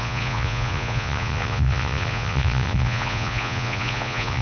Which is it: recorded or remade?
remade